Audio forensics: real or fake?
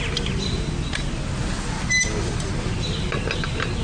real